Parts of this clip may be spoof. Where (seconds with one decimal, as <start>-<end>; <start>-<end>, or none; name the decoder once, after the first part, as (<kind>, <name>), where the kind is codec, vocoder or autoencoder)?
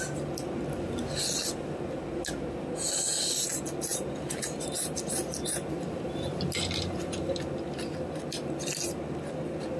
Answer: 3.9-8.4 (vocoder, BigVGAN v2)